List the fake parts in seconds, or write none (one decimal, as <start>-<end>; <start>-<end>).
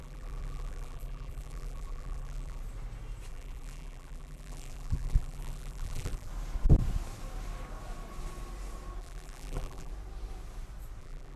0.0-2.6; 3.3-6.3; 9.0-9.9; 11.0-11.4